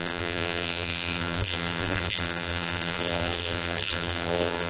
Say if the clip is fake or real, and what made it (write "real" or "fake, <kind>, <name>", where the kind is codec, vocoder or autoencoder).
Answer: fake, vocoder, BigVGAN v2